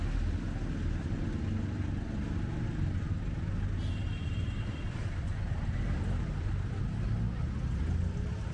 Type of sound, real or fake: real